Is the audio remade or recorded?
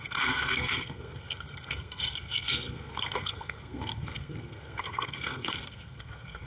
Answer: remade